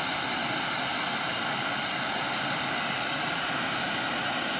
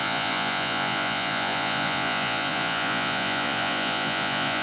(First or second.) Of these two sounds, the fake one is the second